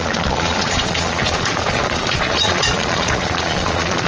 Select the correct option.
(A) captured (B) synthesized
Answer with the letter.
B